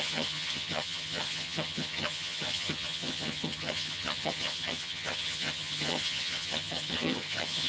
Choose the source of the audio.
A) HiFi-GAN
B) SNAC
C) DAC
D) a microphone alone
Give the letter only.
A